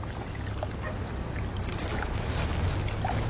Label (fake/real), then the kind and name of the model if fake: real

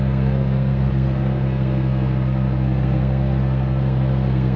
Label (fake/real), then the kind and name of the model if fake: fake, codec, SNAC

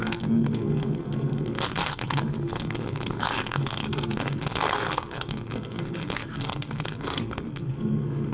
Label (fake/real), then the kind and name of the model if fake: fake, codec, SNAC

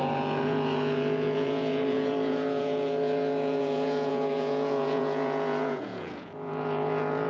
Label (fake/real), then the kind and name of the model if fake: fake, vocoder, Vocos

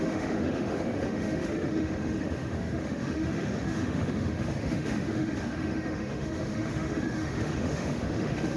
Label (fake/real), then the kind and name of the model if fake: fake, autoencoder, DAC-VAE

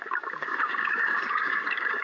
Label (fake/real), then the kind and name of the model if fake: fake, codec, DAC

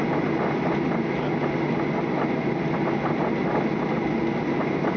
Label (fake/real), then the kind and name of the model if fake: real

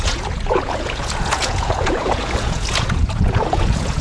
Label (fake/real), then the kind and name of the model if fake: fake, vocoder, Vocos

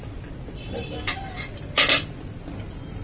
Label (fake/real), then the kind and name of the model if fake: real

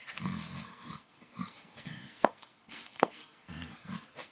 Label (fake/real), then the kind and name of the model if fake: fake, codec, SNAC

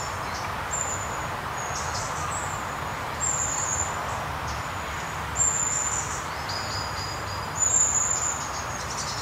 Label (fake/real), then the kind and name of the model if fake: real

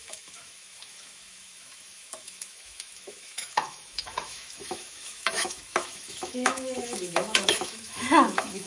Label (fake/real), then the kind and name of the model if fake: fake, autoencoder, DAC-VAE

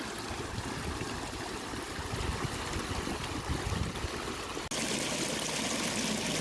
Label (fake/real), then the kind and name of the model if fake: real